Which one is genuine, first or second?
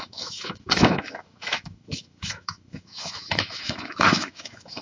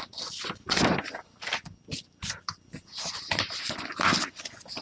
second